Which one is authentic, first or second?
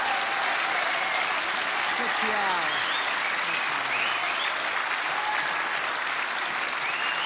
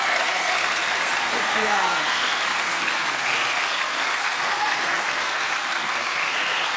first